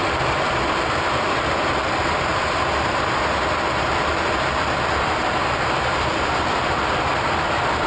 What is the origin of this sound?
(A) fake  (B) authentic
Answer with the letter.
A